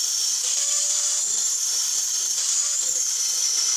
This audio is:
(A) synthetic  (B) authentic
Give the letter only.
A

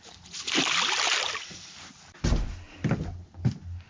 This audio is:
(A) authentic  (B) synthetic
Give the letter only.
A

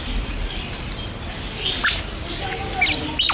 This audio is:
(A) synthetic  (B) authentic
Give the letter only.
B